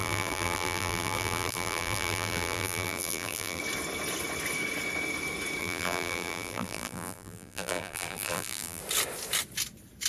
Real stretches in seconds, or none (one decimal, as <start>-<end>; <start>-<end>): 3.6-5.6; 8.8-10.1